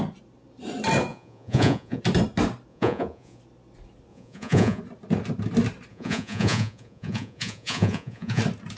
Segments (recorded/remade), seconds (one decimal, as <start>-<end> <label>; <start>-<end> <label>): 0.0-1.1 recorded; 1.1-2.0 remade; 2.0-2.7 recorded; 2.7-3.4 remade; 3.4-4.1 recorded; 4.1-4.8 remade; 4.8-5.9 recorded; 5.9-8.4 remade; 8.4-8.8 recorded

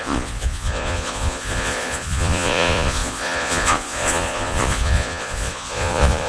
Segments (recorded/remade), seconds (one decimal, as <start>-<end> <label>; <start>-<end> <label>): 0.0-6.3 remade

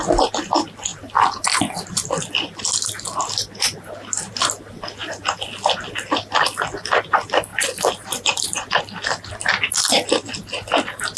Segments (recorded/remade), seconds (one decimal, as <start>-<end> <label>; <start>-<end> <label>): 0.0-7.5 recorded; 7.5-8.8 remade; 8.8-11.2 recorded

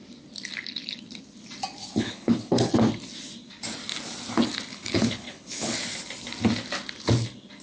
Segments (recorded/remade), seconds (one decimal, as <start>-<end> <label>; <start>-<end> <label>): 0.0-1.9 recorded; 1.9-2.7 remade; 2.7-4.7 recorded; 4.7-5.8 remade; 5.8-7.6 recorded

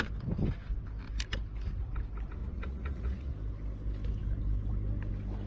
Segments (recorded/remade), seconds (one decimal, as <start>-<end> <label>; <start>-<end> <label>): 0.0-2.4 recorded; 2.4-3.3 remade; 3.3-5.5 recorded

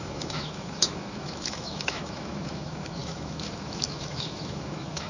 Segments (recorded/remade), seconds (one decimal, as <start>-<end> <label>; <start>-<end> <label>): 0.0-5.1 remade

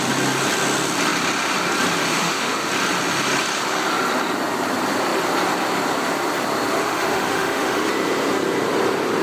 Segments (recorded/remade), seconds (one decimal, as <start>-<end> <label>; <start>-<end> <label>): 0.0-2.1 recorded; 2.1-2.7 remade; 2.7-6.8 recorded; 6.8-7.9 remade; 7.9-9.2 recorded